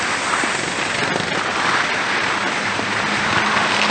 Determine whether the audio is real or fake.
real